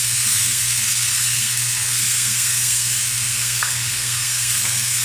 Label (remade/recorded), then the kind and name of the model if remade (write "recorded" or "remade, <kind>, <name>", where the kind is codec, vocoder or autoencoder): remade, codec, SNAC